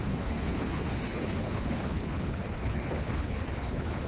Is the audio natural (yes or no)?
no